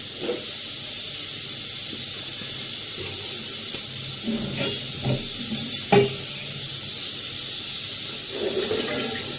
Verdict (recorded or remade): recorded